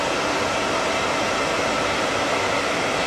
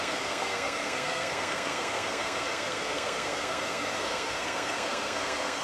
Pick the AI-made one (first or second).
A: second